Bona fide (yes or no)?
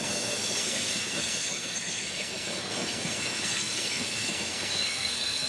no